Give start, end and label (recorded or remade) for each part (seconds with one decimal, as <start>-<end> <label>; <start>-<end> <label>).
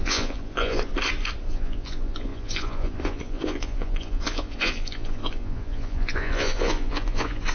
0.0-0.9 remade; 0.9-1.5 recorded; 1.5-7.5 remade